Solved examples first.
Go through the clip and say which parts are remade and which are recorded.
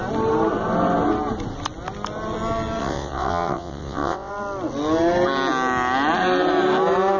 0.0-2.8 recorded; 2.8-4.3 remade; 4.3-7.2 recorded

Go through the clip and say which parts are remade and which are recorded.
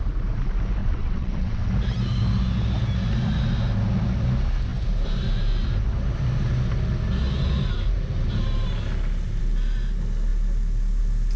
0.0-0.8 recorded; 0.8-1.7 remade; 1.7-11.4 recorded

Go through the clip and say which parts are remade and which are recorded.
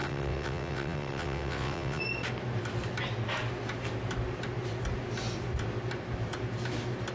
0.0-2.0 remade; 2.0-7.1 recorded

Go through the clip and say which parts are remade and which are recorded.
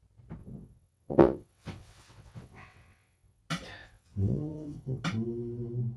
0.0-0.4 recorded; 0.4-3.4 remade; 3.4-3.8 recorded; 3.8-5.0 remade; 5.0-6.0 recorded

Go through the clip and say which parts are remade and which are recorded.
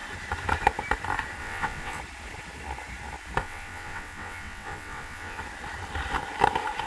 0.0-1.4 recorded; 1.4-2.0 remade; 2.0-3.4 recorded; 3.4-5.4 remade; 5.4-6.9 recorded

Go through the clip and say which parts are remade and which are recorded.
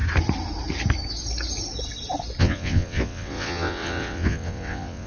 0.0-2.4 recorded; 2.4-5.1 remade